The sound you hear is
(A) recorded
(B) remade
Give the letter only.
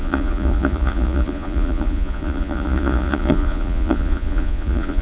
B